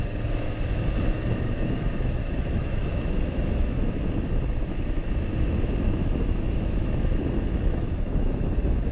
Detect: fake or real fake